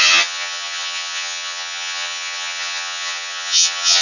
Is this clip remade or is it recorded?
remade